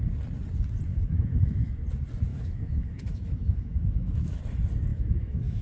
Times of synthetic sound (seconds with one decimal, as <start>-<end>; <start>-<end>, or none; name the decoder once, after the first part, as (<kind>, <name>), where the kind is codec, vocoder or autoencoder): 0.9-1.7 (autoencoder, DAC-VAE); 2.3-4.4; 4.9-5.6